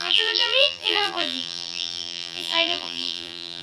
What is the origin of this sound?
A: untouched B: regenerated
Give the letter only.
B